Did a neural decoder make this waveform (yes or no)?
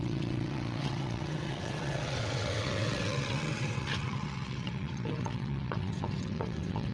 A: yes